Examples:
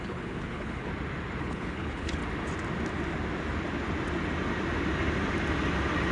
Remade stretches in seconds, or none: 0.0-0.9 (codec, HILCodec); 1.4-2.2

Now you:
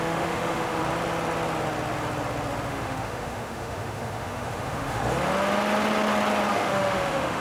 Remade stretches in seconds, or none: 0.0-0.8 (autoencoder, DAC-VAE); 2.7-5.0; 6.5-7.4

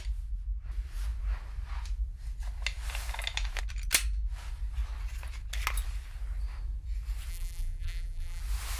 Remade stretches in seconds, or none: 7.3-8.4 (vocoder, BigVGAN v2)

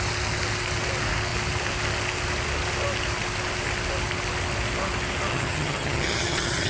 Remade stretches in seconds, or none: 5.3-6.7 (vocoder, HiFi-GAN)